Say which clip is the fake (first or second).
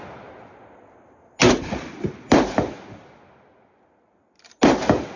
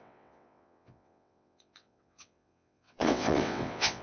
second